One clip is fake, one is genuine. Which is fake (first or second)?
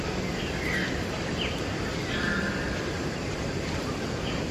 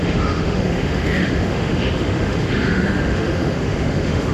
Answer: second